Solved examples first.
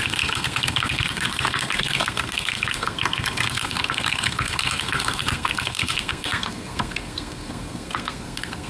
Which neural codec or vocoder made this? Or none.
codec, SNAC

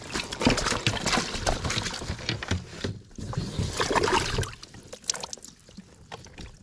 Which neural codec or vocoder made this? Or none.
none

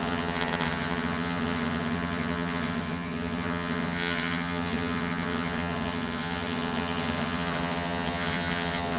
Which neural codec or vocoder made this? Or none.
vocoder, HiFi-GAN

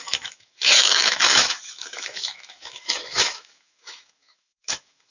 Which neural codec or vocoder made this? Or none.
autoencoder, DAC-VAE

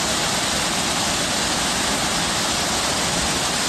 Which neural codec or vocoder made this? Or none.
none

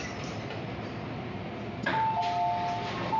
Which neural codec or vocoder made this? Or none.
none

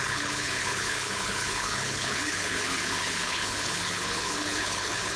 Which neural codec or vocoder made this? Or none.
codec, HILCodec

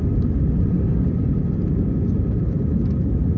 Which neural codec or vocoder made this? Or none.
none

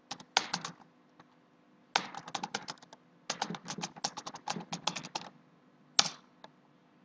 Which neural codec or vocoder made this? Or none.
none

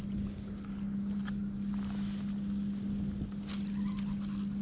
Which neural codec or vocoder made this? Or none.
none